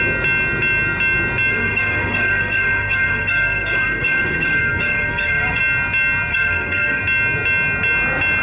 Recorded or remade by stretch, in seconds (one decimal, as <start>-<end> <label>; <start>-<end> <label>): 0.0-1.5 recorded; 1.5-5.6 remade; 5.6-6.3 recorded; 6.3-7.0 remade; 7.0-8.4 recorded